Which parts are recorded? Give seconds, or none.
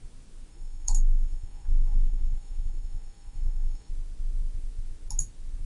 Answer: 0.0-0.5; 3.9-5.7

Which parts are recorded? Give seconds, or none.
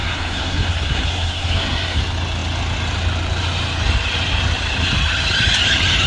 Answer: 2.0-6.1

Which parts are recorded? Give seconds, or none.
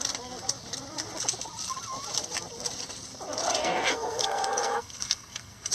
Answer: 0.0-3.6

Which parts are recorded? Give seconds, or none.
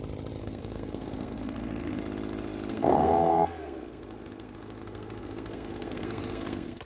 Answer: 0.0-0.4; 2.0-2.7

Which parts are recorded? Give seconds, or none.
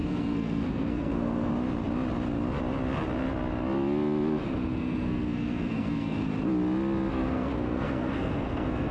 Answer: 1.5-4.8; 6.2-7.1